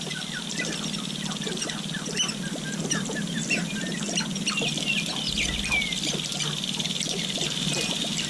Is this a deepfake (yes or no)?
no